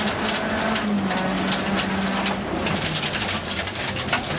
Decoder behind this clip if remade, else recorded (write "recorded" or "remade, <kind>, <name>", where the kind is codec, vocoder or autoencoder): recorded